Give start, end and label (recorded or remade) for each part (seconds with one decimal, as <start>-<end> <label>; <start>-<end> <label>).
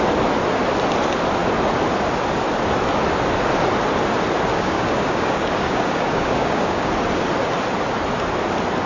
0.0-4.5 recorded; 4.5-6.9 remade; 6.9-8.9 recorded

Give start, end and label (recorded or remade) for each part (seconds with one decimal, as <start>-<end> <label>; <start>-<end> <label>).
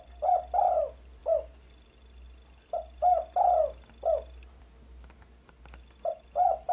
0.0-6.7 recorded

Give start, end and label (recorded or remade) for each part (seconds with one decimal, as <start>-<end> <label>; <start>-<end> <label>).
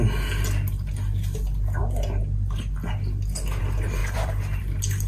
0.0-4.0 recorded; 4.0-4.6 remade; 4.6-5.1 recorded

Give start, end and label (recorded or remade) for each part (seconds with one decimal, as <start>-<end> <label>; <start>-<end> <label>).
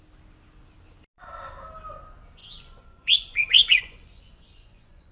0.0-2.4 recorded; 2.4-5.1 remade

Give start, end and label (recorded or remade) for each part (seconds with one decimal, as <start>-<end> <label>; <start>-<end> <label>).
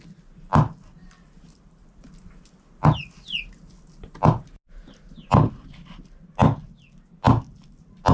0.0-8.1 recorded